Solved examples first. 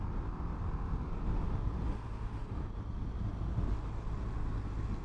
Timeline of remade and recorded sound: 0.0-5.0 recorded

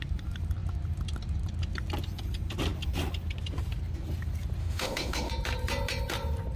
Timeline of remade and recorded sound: 0.0-4.6 recorded; 4.6-5.3 remade; 5.3-6.6 recorded

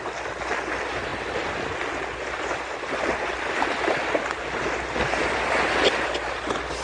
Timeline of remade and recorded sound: 0.0-6.8 recorded